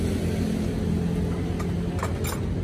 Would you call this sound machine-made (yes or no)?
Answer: no